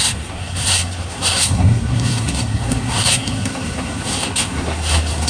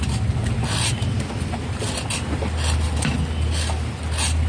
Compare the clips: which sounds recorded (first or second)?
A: second